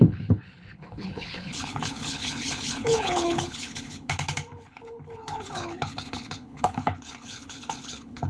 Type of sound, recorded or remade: remade